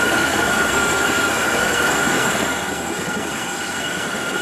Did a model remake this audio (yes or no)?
yes